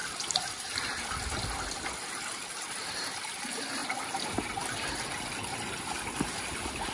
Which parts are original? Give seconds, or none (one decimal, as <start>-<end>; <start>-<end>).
0.0-6.9